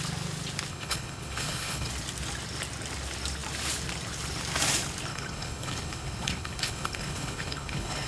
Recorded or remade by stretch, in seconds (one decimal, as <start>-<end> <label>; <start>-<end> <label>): 0.0-0.7 recorded; 0.7-1.9 remade; 1.9-5.1 recorded; 5.1-8.1 remade